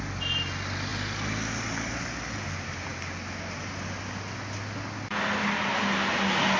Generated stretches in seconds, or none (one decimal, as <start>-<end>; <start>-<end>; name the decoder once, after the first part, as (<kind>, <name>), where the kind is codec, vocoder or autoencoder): none